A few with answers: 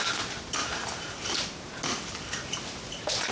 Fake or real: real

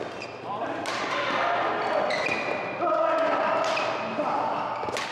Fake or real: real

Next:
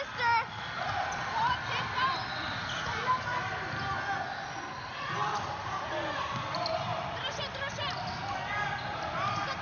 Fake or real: real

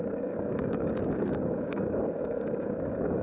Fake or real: fake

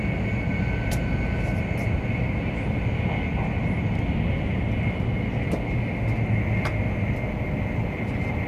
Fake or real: real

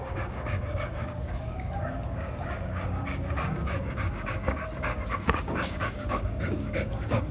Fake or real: fake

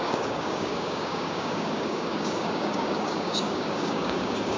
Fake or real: fake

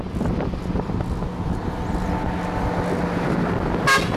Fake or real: real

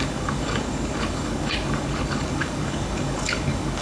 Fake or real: fake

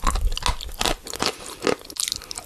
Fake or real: real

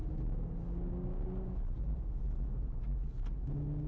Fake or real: real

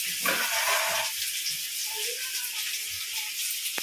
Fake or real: real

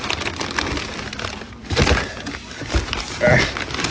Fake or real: real